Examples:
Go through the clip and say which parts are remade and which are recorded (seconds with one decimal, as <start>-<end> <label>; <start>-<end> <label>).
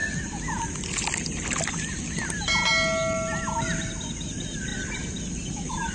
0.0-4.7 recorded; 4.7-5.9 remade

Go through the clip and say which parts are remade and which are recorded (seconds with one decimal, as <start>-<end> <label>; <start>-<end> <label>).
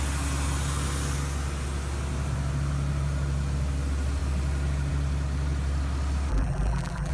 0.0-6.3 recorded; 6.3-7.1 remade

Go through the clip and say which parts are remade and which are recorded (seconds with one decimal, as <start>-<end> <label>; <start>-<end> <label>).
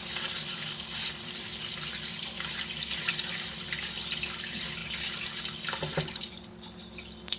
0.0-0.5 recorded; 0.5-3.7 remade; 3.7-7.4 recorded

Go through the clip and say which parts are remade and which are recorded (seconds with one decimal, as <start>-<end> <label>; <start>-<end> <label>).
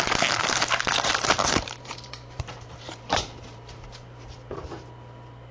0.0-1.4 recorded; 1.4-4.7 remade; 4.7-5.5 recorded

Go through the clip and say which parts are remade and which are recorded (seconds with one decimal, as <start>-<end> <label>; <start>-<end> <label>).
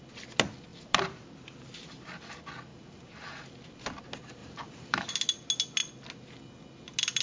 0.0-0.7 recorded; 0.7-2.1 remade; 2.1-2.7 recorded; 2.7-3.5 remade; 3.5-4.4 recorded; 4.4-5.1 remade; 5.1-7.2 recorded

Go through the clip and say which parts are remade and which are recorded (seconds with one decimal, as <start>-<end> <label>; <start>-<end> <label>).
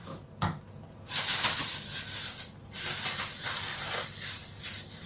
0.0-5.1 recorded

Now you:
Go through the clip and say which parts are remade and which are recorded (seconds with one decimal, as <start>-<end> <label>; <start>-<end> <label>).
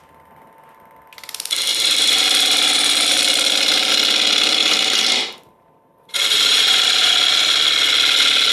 0.0-1.7 recorded; 1.7-3.9 remade; 3.9-4.6 recorded; 4.6-7.1 remade; 7.1-8.5 recorded